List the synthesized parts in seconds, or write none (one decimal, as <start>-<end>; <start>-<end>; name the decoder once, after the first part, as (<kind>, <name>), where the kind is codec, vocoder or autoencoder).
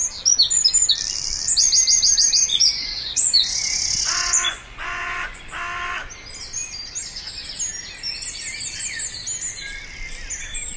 2.5-5.4 (vocoder, Vocos)